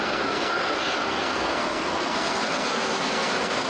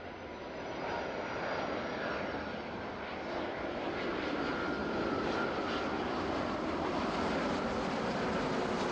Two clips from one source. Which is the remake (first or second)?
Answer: first